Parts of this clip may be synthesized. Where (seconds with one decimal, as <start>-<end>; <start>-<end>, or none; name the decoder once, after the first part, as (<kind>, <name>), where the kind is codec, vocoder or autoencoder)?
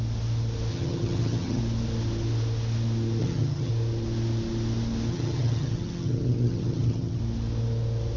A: 0.7-1.6 (vocoder, HiFi-GAN); 3.2-3.7; 5.1-7.2